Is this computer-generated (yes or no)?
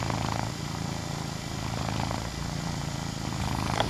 no